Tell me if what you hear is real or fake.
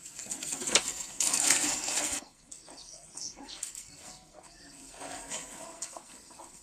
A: fake